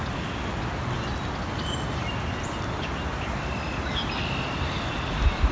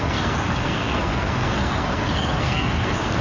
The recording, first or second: first